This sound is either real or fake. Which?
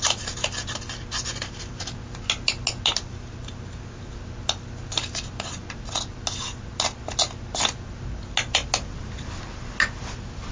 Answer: real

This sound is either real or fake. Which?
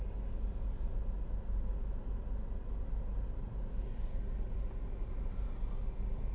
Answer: real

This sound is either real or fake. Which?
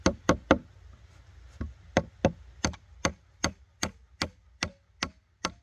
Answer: real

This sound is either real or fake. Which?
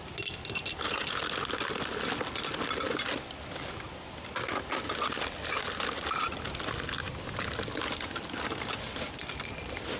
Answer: real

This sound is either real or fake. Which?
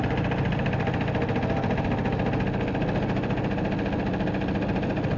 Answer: real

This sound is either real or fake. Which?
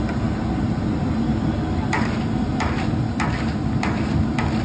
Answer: real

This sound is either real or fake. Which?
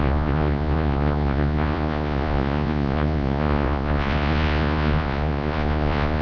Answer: fake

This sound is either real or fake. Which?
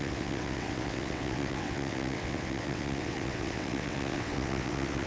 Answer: fake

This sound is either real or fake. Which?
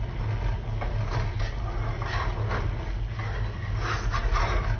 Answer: real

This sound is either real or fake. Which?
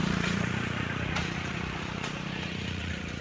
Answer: fake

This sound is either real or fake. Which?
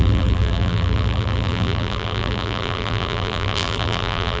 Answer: fake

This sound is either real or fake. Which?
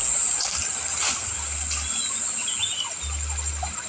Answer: real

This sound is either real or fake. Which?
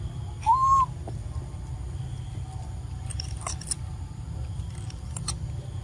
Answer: real